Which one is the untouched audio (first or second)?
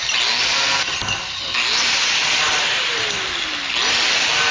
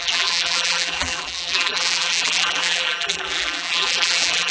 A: first